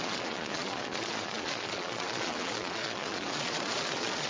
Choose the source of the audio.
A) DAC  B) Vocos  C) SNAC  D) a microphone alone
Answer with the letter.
B